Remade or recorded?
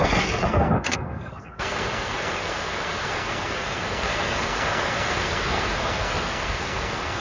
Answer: remade